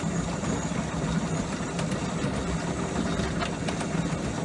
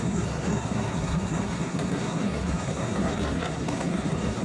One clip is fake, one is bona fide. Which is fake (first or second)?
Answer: second